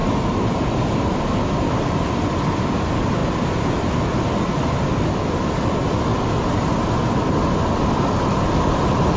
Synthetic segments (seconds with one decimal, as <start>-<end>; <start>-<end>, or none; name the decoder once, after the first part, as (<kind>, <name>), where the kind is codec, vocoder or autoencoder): none